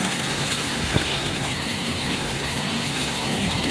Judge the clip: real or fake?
fake